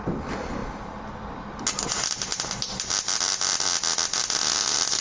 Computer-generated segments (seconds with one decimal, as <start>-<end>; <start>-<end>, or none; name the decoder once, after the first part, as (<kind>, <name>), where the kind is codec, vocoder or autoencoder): none